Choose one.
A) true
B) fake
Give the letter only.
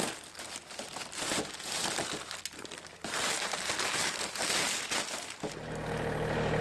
A